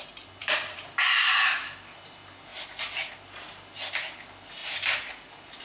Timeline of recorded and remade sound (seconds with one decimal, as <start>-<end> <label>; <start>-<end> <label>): 0.0-0.4 recorded; 0.4-1.2 remade; 1.2-2.5 recorded; 2.5-3.1 remade; 3.1-5.6 recorded